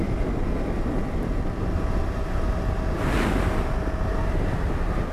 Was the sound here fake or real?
real